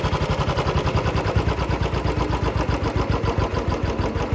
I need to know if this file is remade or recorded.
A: recorded